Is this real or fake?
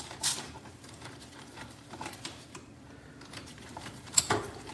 fake